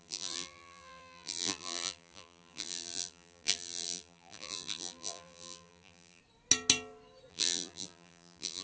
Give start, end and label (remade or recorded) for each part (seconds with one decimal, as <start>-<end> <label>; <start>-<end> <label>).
0.0-6.2 remade; 6.2-7.3 recorded; 7.3-8.6 remade